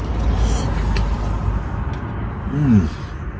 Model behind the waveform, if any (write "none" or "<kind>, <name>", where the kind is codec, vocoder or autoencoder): none